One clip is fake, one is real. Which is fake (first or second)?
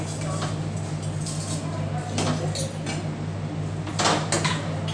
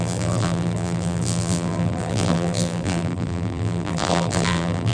second